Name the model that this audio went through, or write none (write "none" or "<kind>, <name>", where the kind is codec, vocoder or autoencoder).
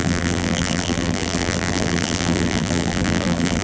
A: vocoder, BigVGAN v2